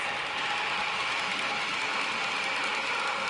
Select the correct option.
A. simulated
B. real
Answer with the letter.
A